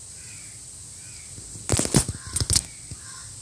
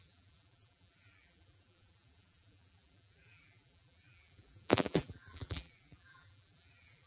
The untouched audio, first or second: first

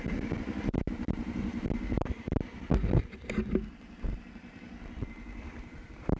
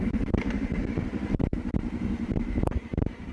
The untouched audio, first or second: first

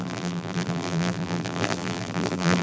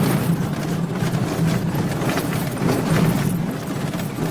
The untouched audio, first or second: second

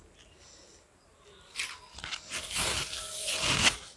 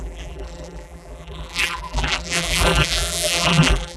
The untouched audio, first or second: first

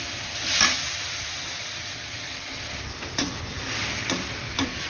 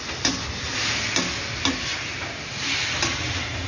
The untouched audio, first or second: second